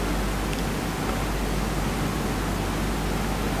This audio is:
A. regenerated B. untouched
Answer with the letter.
B